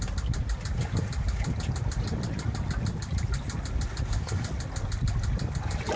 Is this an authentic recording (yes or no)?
yes